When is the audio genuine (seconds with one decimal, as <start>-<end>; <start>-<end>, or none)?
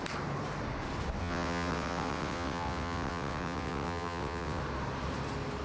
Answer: 0.0-1.2; 4.6-5.6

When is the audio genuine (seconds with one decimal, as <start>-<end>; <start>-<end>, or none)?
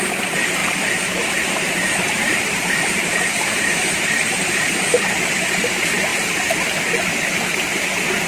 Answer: 0.0-0.6; 5.3-8.3